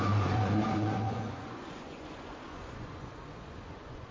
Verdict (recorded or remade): remade